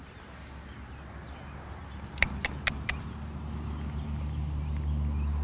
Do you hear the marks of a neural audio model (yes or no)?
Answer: no